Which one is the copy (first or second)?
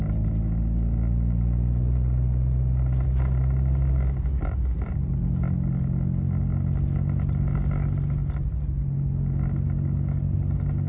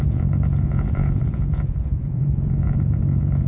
second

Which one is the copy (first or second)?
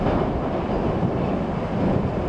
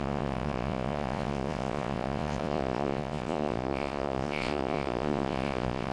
second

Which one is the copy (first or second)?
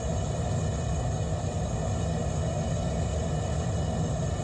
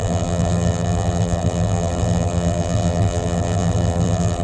second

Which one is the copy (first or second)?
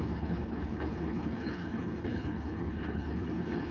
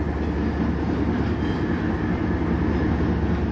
first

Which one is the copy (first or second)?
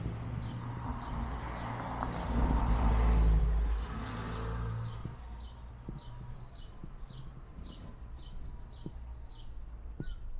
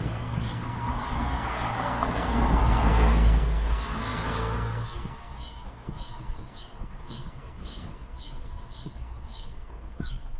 second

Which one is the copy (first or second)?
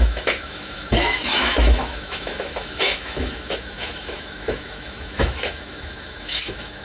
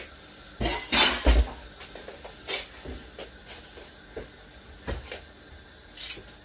first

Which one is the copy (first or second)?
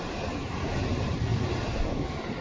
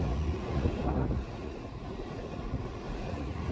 second